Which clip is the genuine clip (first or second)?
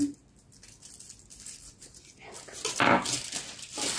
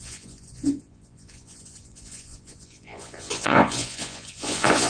first